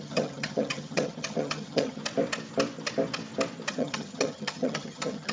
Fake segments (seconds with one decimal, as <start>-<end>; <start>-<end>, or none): 0.0-2.0; 3.7-5.3